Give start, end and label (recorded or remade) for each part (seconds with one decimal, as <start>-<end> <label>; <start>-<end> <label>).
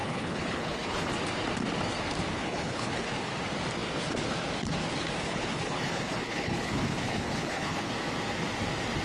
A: 0.0-1.1 remade; 1.1-2.3 recorded; 2.3-3.3 remade; 3.3-5.2 recorded; 5.2-7.9 remade; 7.9-9.0 recorded